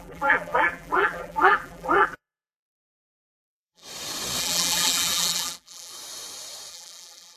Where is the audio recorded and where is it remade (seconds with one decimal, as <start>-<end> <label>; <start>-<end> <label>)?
0.0-3.8 remade; 3.8-4.4 recorded; 4.4-5.9 remade; 5.9-6.7 recorded; 6.7-7.4 remade